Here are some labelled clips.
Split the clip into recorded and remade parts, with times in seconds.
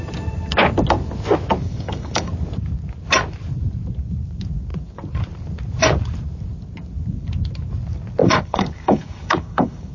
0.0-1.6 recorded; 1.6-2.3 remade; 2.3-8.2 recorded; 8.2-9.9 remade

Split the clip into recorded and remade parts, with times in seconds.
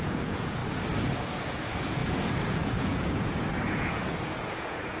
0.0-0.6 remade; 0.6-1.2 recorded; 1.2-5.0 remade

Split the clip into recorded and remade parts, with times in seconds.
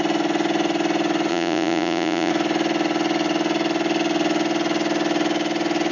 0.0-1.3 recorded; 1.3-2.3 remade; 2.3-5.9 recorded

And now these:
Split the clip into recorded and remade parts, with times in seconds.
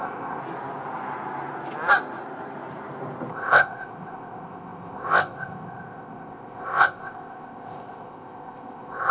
0.0-0.4 remade; 0.4-3.3 recorded; 3.3-9.1 remade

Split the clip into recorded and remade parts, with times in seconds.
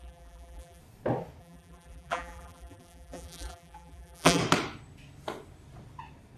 0.0-0.8 remade; 0.8-1.4 recorded; 1.4-4.4 remade; 4.4-6.4 recorded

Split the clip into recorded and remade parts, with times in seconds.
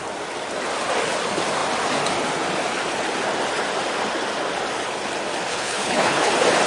0.0-5.5 recorded; 5.5-6.3 remade; 6.3-6.7 recorded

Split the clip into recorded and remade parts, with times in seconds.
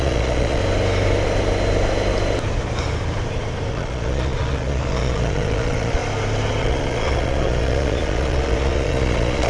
0.0-0.6 remade; 0.6-3.7 recorded; 3.7-6.0 remade; 6.0-6.6 recorded; 6.6-9.5 remade